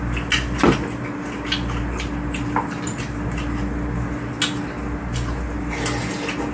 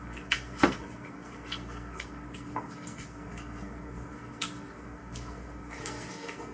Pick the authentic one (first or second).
first